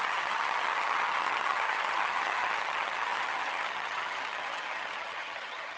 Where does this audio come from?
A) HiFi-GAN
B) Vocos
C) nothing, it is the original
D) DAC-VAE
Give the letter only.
A